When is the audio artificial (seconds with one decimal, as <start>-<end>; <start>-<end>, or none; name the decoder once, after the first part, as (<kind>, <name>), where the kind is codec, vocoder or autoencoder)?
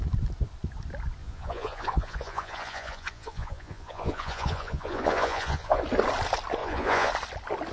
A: 1.2-5.8 (vocoder, Vocos); 6.6-7.1